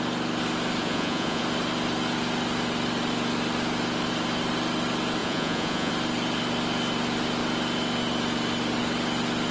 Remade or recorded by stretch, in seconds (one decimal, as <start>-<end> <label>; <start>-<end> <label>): 0.0-0.8 recorded; 0.8-1.4 remade; 1.4-5.2 recorded; 5.2-5.9 remade; 5.9-9.5 recorded